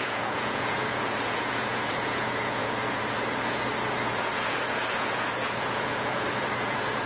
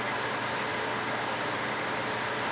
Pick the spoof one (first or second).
first